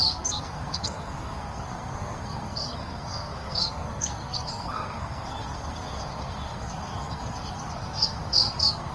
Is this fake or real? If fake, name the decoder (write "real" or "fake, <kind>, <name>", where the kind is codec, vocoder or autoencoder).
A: fake, codec, SNAC